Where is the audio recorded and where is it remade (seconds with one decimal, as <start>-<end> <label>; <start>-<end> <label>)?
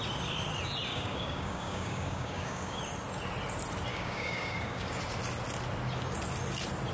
0.0-0.9 recorded; 0.9-2.8 remade; 2.8-3.9 recorded; 3.9-5.0 remade; 5.0-6.9 recorded